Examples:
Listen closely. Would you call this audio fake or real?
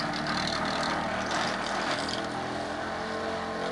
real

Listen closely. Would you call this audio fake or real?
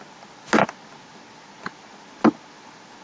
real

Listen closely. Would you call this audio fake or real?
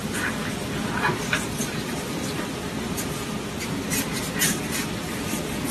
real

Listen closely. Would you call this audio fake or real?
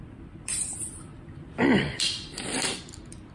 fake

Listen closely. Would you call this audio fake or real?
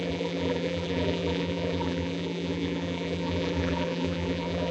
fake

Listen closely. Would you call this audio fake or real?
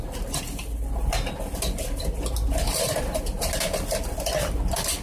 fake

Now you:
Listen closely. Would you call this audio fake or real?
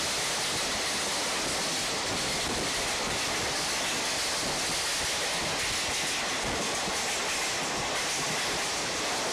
real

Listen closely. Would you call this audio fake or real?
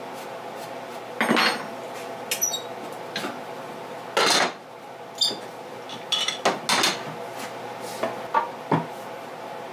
real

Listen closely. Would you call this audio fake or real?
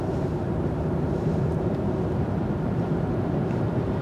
fake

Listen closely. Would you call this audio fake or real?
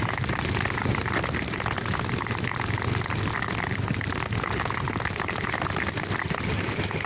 real